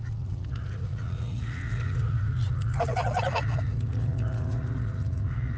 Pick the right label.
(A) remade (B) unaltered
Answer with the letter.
A